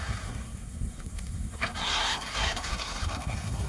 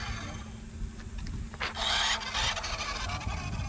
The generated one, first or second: first